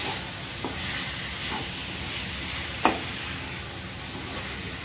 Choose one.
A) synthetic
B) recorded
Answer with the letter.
B